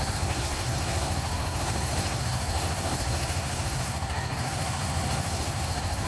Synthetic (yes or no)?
yes